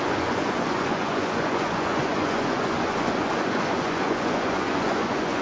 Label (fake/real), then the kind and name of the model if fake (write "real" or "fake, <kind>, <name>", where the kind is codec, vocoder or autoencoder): fake, vocoder, Vocos